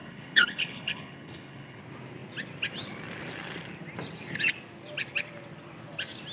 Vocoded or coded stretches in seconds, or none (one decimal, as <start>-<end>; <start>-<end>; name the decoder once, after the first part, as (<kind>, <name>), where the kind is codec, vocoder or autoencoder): 0.0-1.8 (codec, HILCodec)